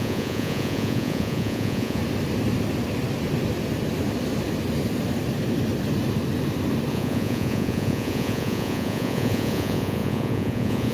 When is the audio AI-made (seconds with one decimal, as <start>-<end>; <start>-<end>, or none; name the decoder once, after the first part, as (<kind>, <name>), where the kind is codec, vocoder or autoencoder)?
0.0-2.0 (vocoder, Vocos); 6.9-10.9